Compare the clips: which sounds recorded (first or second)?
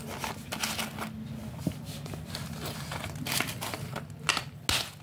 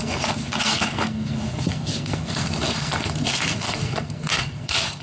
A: first